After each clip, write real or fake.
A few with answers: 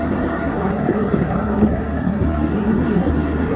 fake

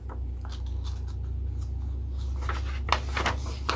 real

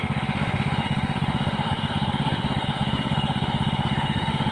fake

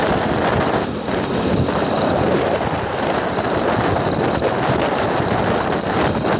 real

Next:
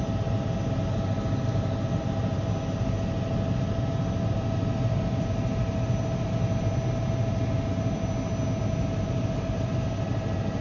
real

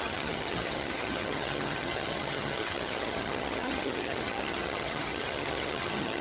fake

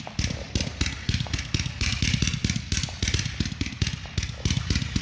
fake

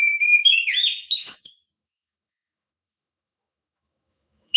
fake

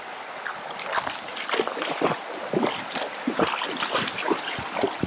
real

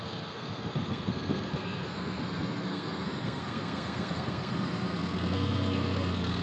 fake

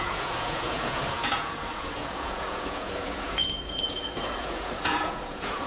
fake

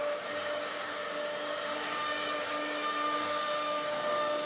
fake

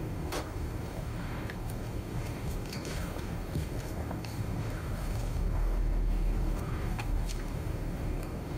fake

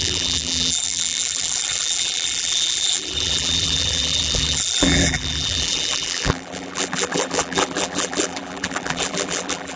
fake